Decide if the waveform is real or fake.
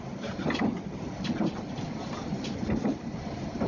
real